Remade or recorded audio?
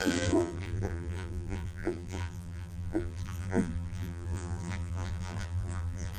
remade